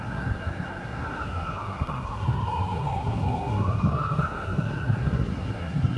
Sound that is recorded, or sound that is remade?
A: remade